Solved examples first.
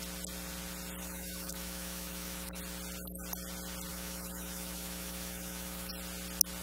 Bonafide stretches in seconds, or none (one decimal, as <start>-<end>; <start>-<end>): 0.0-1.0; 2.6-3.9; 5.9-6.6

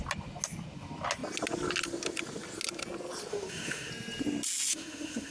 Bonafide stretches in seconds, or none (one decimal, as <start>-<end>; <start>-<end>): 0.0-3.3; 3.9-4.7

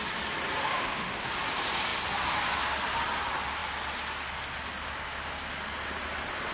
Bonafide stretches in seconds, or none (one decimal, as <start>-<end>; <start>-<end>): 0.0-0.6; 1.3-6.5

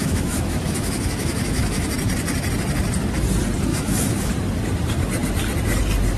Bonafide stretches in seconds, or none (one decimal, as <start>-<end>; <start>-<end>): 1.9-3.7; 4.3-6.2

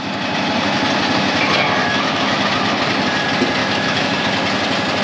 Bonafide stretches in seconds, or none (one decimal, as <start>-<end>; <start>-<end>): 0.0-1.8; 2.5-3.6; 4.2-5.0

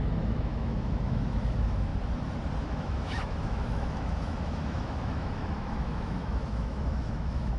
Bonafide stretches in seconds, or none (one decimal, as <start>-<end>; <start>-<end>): 1.9-2.6

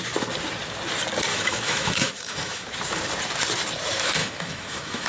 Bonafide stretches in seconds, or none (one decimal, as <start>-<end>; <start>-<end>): 0.0-1.3; 2.7-4.2

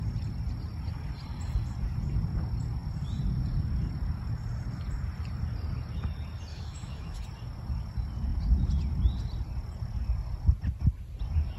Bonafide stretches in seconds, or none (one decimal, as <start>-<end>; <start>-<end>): 0.0-6.5; 7.2-11.6